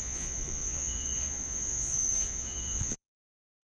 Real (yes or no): no